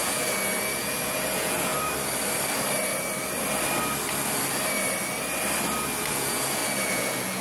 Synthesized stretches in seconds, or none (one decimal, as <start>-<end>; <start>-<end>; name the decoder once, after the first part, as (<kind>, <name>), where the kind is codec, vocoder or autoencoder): 0.0-1.7 (vocoder, Vocos); 6.1-7.4